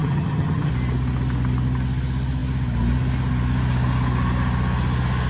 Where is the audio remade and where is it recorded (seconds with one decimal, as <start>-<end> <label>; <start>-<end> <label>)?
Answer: 0.0-0.7 remade; 0.7-5.3 recorded